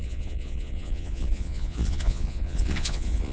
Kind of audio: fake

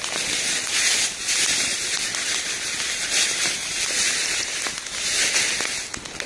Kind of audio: real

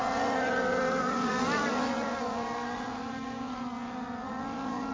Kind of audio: real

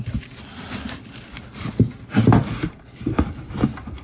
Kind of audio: real